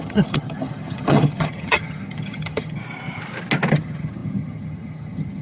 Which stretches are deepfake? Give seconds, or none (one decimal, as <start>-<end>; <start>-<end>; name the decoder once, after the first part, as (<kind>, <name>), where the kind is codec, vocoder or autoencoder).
0.0-2.8 (vocoder, HiFi-GAN); 3.7-5.4